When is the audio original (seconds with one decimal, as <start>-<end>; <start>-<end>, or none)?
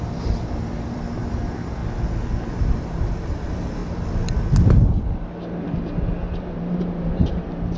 1.8-2.6; 3.8-6.4